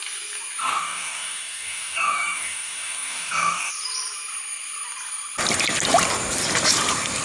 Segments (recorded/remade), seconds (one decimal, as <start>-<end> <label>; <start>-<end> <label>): 0.0-0.6 recorded; 0.6-3.7 remade; 3.7-7.2 recorded